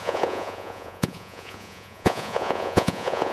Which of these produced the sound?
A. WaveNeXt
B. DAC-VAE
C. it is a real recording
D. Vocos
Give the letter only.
D